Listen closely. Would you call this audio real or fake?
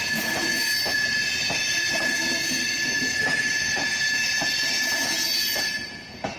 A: fake